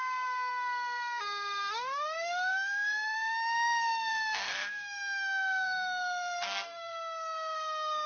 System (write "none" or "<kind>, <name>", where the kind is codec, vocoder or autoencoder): codec, SNAC